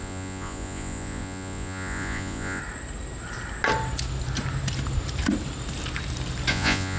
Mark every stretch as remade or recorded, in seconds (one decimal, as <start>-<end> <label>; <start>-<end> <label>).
0.0-2.6 remade; 2.6-6.5 recorded; 6.5-7.0 remade